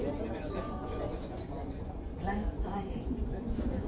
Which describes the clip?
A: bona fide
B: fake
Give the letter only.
B